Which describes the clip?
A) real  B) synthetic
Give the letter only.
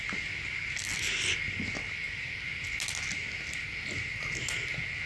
A